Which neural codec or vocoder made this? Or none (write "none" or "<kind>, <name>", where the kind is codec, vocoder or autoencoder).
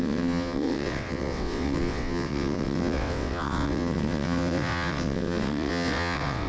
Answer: vocoder, WaveNeXt